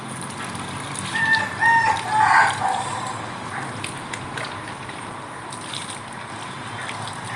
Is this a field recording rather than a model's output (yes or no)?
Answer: yes